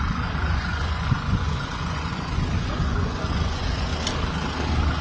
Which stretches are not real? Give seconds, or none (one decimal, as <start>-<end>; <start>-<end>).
0.0-3.9